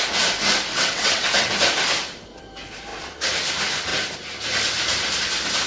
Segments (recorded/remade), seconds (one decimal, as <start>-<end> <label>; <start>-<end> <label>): 0.0-0.7 recorded; 0.7-1.5 remade; 1.5-5.7 recorded